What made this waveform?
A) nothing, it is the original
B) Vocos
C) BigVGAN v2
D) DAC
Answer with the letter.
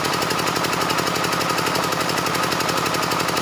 C